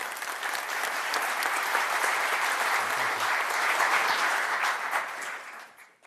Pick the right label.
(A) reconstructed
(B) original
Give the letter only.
A